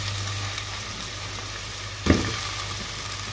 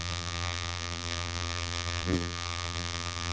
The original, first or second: first